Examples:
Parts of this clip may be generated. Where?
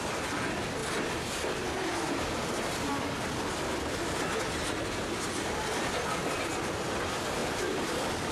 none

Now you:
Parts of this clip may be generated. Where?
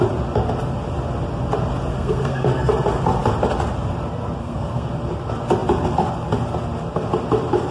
1.9-2.7 (codec, SNAC); 4.4-4.9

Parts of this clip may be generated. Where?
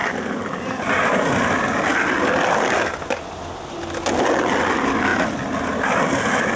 none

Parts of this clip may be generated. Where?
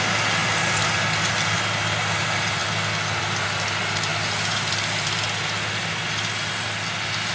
none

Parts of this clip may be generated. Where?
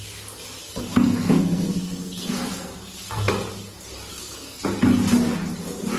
0.6-3.3 (codec, SNAC); 4.1-4.6